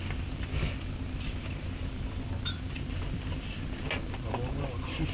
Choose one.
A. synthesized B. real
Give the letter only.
B